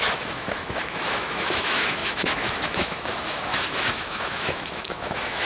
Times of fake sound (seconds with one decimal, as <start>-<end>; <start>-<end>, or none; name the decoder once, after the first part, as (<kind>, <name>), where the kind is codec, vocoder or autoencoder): 0.0-5.4 (autoencoder, DAC-VAE)